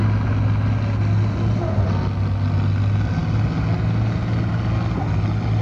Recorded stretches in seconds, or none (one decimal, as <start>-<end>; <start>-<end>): 0.0-5.6